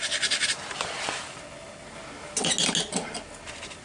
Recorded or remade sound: recorded